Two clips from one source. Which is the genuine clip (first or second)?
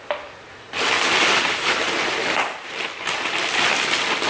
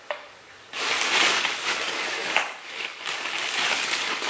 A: first